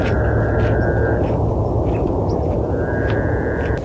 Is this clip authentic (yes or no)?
yes